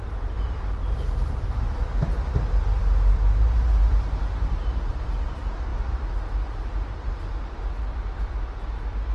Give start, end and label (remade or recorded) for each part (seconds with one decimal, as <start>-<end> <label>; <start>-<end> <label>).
0.0-0.8 recorded; 0.8-1.9 remade; 1.9-2.7 recorded; 2.7-4.9 remade; 4.9-9.1 recorded